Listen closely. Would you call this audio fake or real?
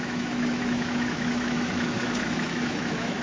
fake